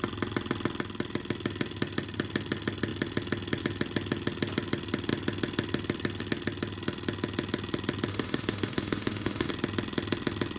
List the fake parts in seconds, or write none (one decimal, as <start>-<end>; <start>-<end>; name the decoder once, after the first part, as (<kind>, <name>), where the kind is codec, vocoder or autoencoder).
8.1-9.5 (autoencoder, DAC-VAE)